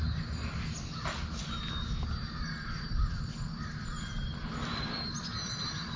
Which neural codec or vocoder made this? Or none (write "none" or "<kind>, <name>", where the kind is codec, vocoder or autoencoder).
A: none